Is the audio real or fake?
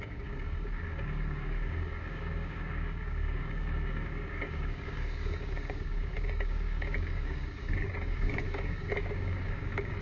fake